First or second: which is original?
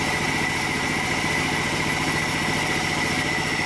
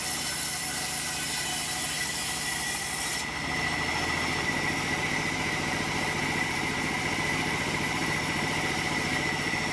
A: first